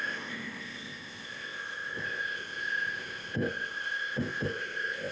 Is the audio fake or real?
fake